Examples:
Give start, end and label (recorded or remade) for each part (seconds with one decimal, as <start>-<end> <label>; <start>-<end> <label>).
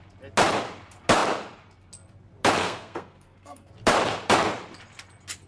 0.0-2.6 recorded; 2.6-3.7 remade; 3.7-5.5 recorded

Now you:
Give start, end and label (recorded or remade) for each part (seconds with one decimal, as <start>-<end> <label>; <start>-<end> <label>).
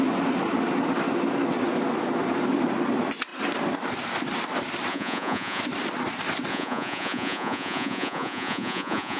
0.0-4.9 recorded; 4.9-5.6 remade; 5.6-6.5 recorded; 6.5-9.2 remade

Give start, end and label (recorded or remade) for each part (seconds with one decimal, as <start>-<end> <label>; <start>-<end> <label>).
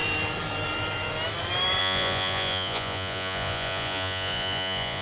0.0-1.8 recorded; 1.8-5.0 remade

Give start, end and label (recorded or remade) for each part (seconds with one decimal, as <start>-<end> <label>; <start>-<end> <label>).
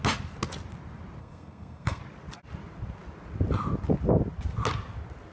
0.0-1.2 recorded; 1.2-2.0 remade; 2.0-5.3 recorded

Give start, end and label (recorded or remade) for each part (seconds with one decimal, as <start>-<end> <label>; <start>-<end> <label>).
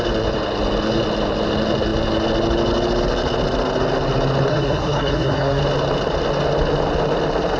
0.0-4.5 recorded; 4.5-5.6 remade; 5.6-7.6 recorded